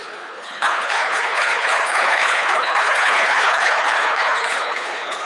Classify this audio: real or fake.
fake